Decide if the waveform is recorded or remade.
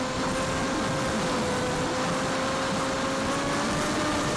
recorded